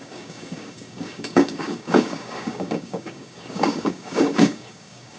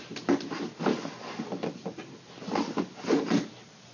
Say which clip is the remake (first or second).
first